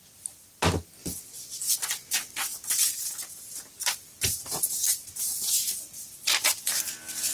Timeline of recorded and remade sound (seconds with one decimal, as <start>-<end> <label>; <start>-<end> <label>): 0.0-7.3 recorded